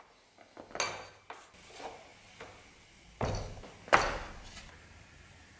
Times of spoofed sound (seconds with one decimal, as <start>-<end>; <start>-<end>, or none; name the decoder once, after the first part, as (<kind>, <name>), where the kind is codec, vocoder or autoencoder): none